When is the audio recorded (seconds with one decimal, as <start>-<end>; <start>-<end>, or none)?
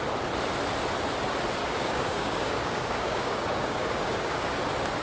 0.0-1.6; 4.6-5.0